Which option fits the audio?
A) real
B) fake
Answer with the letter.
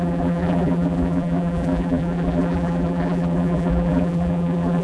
B